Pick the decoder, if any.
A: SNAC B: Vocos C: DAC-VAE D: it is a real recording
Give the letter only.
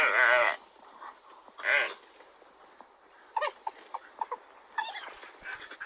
D